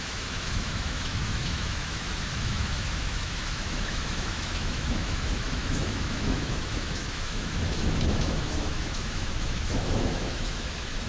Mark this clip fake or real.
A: fake